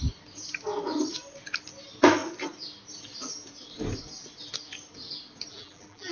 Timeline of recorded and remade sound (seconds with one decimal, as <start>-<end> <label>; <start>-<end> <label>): 0.0-5.5 recorded; 5.5-6.1 remade